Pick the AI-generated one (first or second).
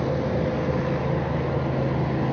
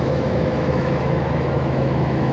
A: second